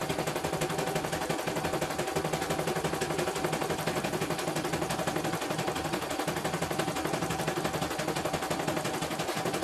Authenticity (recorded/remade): recorded